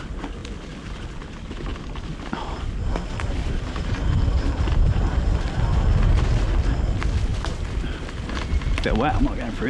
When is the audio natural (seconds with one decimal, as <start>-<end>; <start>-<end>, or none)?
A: 0.0-9.7